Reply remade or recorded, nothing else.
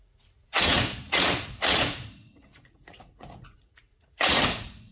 remade